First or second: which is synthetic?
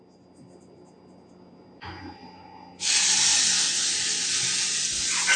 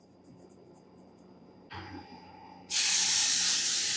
second